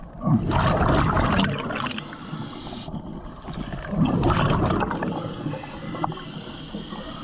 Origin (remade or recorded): recorded